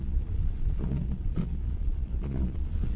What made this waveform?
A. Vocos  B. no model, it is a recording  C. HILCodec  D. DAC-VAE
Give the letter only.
A